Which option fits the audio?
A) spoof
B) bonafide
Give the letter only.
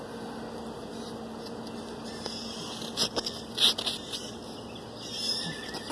B